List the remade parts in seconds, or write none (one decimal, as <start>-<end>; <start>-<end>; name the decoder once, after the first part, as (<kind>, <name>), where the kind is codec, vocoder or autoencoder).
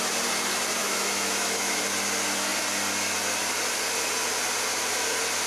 0.8-1.8 (autoencoder, DAC-VAE)